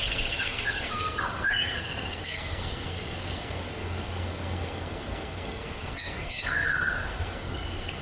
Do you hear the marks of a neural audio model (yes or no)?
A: yes